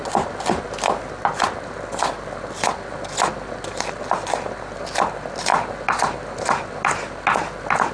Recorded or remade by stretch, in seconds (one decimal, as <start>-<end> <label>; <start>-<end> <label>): 0.0-7.9 recorded

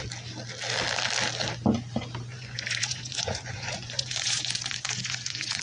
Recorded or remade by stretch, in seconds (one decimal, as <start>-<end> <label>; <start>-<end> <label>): 0.0-2.3 recorded; 2.3-5.6 remade

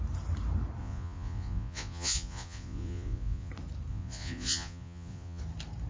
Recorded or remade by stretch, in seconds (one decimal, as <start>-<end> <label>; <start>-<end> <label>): 0.0-0.8 recorded; 0.8-3.5 remade; 3.5-3.9 recorded; 3.9-5.4 remade; 5.4-5.9 recorded

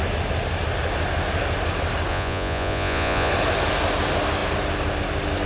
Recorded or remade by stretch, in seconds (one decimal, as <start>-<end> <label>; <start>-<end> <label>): 0.0-2.1 recorded; 2.1-3.3 remade; 3.3-5.5 recorded